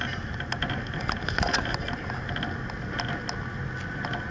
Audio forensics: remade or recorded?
recorded